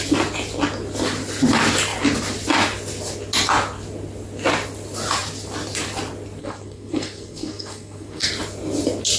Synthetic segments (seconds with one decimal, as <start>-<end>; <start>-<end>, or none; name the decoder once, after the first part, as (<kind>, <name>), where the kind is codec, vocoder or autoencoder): 6.4-8.3 (codec, SNAC)

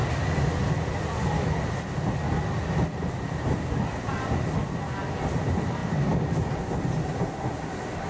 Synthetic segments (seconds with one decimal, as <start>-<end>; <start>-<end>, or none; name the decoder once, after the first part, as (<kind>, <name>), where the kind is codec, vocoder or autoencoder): none